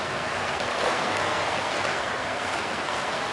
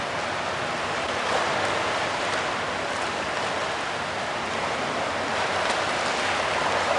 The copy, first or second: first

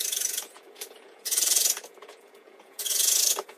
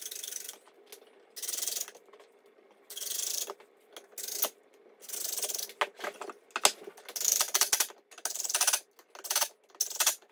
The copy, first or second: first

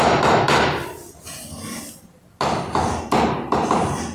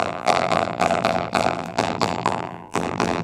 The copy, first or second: second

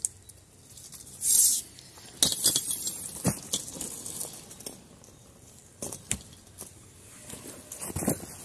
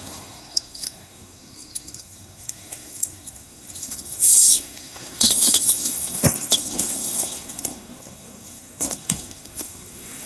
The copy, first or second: second